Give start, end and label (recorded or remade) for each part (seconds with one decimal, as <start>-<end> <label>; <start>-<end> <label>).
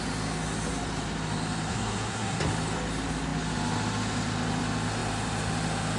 0.0-1.7 recorded; 1.7-2.4 remade; 2.4-6.0 recorded